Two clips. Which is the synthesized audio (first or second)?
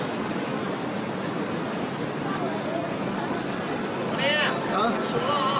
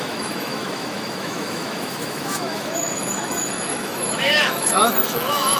second